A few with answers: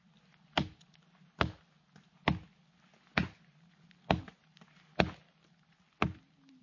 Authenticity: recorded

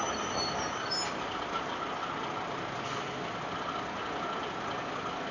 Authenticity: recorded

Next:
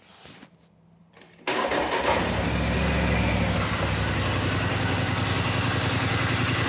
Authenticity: recorded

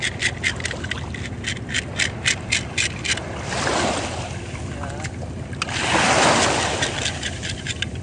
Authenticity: recorded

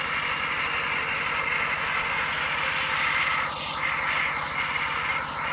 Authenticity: recorded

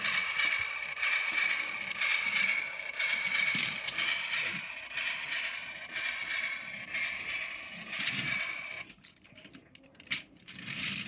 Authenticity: remade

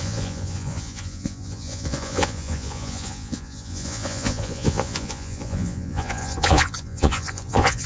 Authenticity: remade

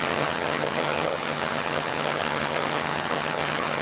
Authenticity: remade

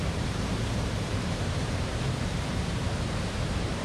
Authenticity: remade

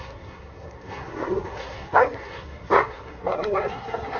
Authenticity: remade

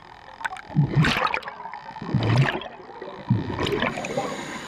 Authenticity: recorded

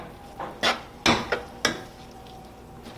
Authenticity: recorded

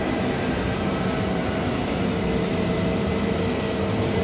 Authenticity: remade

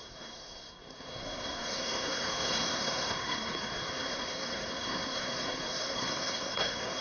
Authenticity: remade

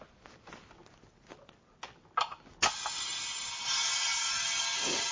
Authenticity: recorded